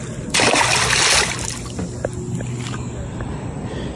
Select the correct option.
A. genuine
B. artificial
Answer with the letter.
A